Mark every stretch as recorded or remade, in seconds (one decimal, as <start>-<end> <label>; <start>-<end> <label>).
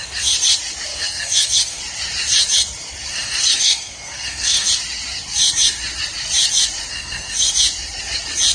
0.0-0.9 recorded; 0.9-1.8 remade; 1.8-3.1 recorded; 3.1-4.7 remade; 4.7-6.9 recorded; 6.9-7.5 remade; 7.5-8.5 recorded